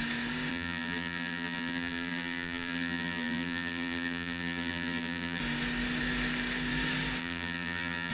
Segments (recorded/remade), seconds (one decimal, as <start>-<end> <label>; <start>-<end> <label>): 0.0-0.5 recorded; 0.5-5.4 remade; 5.4-7.2 recorded; 7.2-8.1 remade